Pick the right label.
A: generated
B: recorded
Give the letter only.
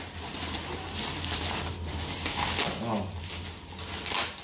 B